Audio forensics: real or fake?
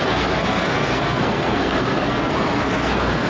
fake